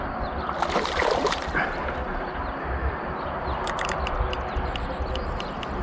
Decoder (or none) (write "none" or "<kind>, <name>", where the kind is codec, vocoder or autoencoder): none